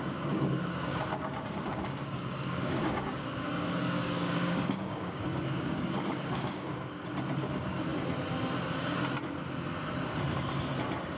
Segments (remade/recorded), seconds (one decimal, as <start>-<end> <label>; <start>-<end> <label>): 0.0-6.7 remade; 6.7-7.4 recorded; 7.4-7.9 remade; 7.9-11.2 recorded